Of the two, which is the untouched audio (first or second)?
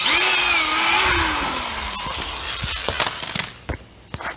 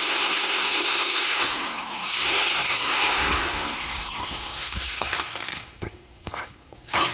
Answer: first